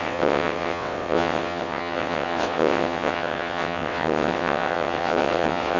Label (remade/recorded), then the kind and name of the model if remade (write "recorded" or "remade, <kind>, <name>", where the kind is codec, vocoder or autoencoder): remade, vocoder, WaveNeXt